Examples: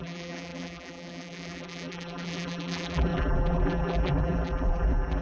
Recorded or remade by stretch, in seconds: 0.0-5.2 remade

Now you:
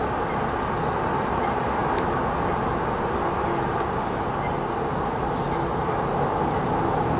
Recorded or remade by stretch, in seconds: 0.0-7.2 recorded

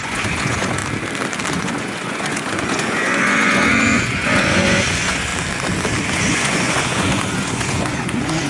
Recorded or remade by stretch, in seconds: 0.0-0.8 remade; 0.8-1.5 recorded; 1.5-5.3 remade; 5.3-6.1 recorded; 6.1-8.5 remade

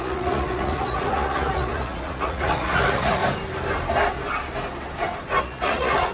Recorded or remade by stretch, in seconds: 0.0-3.2 remade; 3.2-5.4 recorded; 5.4-6.1 remade

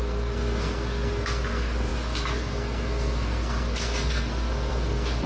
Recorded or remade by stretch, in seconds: 0.0-5.3 remade

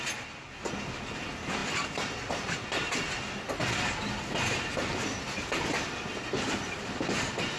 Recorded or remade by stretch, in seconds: 0.0-7.6 recorded

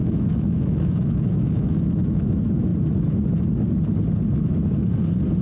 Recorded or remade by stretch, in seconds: 0.0-2.3 remade; 2.3-5.4 recorded